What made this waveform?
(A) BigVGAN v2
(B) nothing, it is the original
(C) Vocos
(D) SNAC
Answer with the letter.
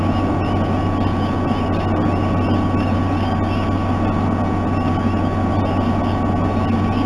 B